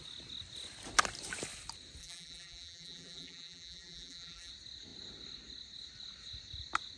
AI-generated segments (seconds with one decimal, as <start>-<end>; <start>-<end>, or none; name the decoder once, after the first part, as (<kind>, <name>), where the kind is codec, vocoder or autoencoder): 2.0-4.5 (vocoder, BigVGAN v2)